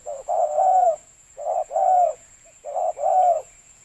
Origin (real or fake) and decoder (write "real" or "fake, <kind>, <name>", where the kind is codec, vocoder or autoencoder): fake, vocoder, Vocos